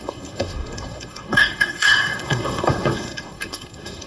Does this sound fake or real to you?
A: fake